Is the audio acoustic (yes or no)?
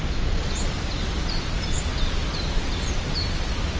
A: yes